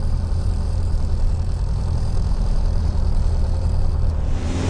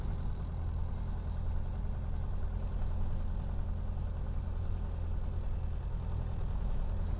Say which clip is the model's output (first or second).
first